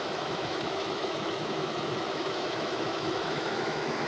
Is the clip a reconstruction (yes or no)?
yes